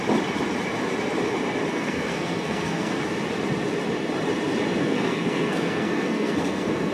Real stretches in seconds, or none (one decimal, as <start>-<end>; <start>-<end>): 0.0-1.7; 3.0-4.8